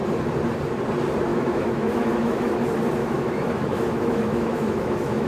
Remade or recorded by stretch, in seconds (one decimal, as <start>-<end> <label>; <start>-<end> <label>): 0.0-1.3 recorded; 1.3-2.6 remade; 2.6-3.0 recorded; 3.0-5.3 remade

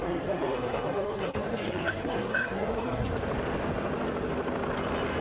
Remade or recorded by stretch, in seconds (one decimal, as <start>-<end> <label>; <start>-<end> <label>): 0.0-3.1 remade; 3.1-5.2 recorded